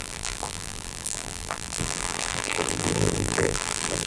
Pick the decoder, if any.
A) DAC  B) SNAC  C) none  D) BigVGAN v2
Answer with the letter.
D